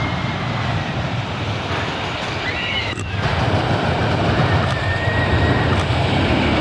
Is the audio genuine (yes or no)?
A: no